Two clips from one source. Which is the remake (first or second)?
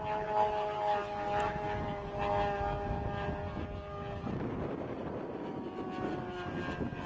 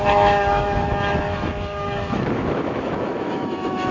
second